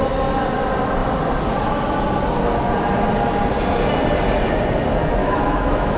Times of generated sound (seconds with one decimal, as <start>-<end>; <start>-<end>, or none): 5.2-6.0